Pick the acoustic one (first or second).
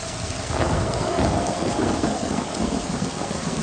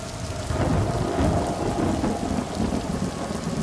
second